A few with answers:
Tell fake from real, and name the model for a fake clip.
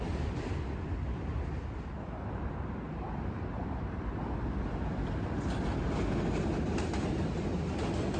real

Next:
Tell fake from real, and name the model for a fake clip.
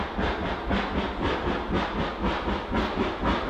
real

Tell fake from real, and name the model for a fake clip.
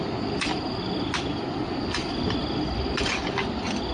real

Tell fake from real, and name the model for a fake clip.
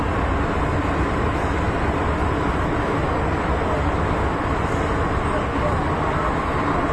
real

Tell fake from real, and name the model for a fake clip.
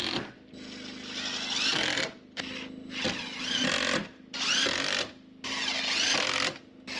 real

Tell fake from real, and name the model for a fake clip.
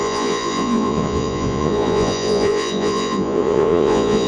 fake, vocoder, Vocos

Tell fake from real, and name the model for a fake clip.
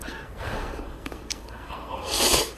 fake, codec, SNAC